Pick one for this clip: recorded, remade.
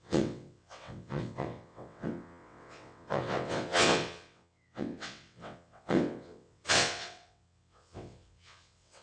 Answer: remade